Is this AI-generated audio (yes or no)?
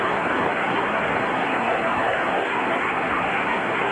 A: yes